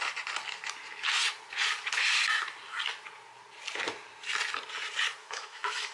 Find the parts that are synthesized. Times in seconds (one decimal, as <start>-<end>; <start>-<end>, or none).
5.2-5.9